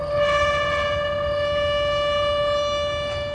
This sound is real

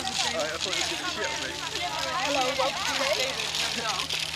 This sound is real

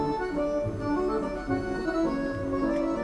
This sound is real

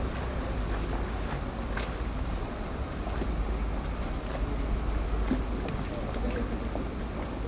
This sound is real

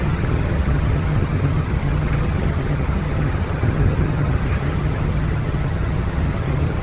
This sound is fake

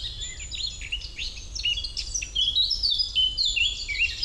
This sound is real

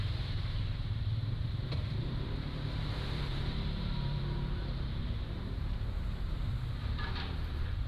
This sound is fake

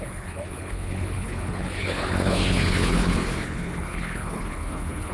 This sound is fake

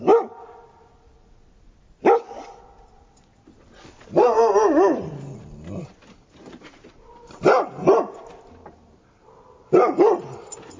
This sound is real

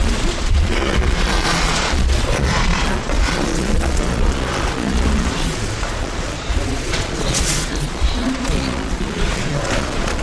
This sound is fake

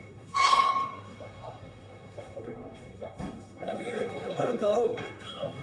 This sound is fake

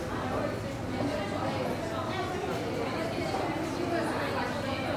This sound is real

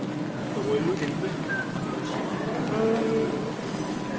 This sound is real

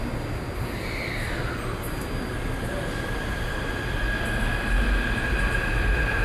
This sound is real